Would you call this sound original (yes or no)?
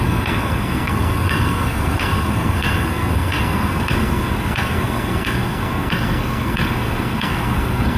no